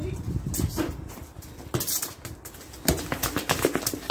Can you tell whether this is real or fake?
real